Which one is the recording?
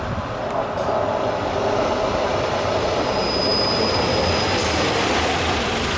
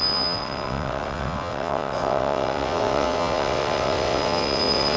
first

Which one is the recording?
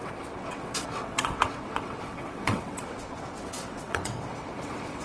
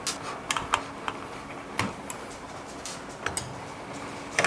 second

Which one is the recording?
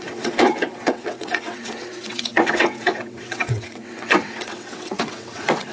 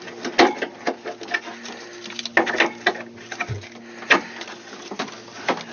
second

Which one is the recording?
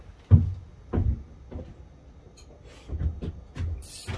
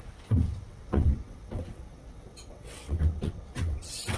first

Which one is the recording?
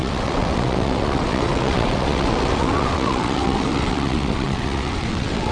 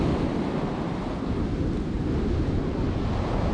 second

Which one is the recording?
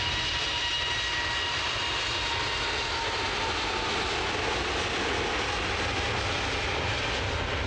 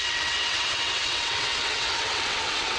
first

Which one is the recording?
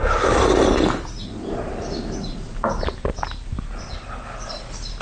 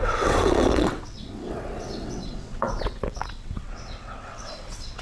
first